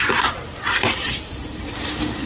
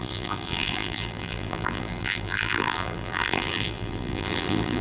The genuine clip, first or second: first